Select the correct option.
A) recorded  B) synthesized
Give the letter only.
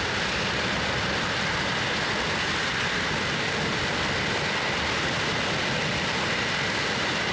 A